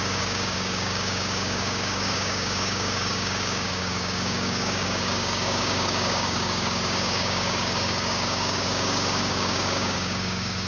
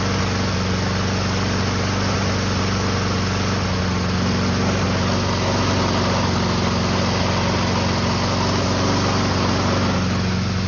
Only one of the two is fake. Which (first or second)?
first